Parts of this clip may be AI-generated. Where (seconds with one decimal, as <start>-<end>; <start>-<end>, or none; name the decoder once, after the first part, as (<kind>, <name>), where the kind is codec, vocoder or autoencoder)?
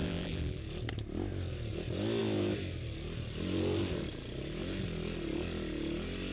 0.0-0.6 (vocoder, BigVGAN v2)